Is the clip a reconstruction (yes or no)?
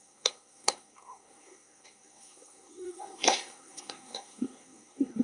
yes